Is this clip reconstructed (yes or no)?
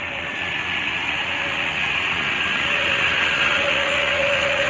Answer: yes